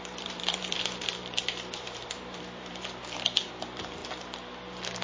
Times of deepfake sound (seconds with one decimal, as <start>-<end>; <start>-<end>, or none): 0.0-4.0

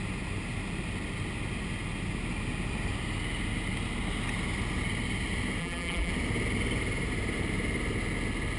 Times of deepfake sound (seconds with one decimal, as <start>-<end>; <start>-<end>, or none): 5.6-6.1

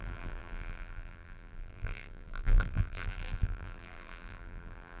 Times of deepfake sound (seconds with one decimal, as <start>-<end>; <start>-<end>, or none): 0.0-5.0

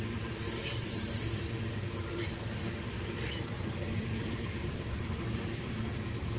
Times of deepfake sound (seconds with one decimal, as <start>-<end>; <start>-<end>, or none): 0.0-6.4

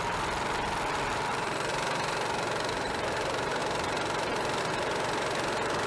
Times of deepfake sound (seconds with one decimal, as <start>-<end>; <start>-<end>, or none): 0.0-1.7; 2.7-3.6; 4.6-5.9

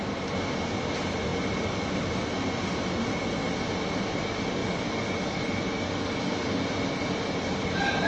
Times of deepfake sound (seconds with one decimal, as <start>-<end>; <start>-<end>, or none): 0.0-1.3; 3.9-4.6; 7.2-8.1

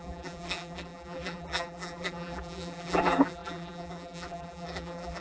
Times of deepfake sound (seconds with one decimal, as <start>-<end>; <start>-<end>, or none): 0.0-5.2

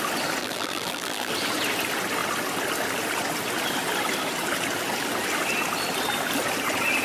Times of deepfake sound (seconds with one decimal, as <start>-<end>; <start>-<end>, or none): 0.4-1.3